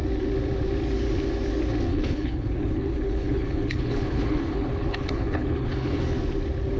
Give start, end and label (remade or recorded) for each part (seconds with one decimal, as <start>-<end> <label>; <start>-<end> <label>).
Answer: 0.0-1.9 recorded; 1.9-6.0 remade; 6.0-6.8 recorded